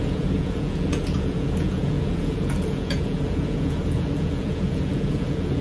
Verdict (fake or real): fake